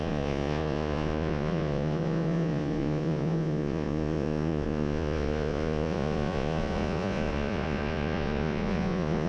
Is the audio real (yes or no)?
no